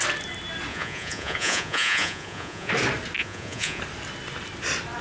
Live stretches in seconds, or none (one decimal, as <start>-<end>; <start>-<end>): 0.0-0.7; 2.7-3.2; 3.8-5.0